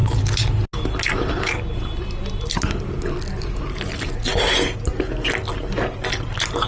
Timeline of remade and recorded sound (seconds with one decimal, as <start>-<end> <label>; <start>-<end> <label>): 0.0-6.7 recorded